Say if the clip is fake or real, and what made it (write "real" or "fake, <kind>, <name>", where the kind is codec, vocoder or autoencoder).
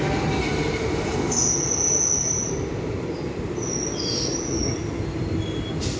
real